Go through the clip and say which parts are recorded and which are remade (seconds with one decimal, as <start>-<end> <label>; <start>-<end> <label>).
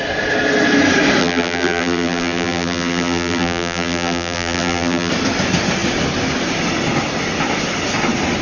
0.0-1.2 recorded; 1.2-5.1 remade; 5.1-8.4 recorded